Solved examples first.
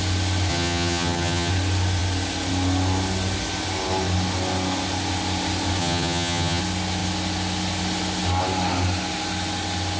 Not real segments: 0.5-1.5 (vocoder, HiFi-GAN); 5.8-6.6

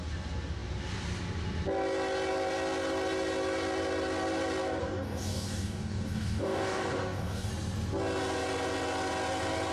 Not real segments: 4.8-7.5 (codec, DAC)

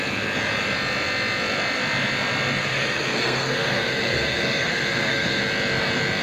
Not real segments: 2.6-5.4 (codec, SNAC)

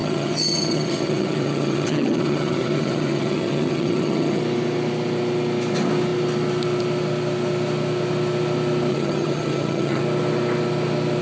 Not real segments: 0.0-4.4 (vocoder, HiFi-GAN); 8.9-10.0

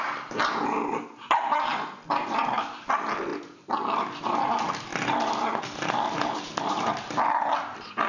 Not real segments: 0.0-3.3 (vocoder, BigVGAN v2); 4.2-8.1

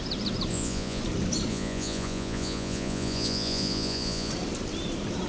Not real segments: 0.5-1.0 (vocoder, Vocos); 1.5-4.3